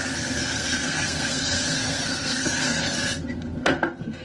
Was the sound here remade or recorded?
remade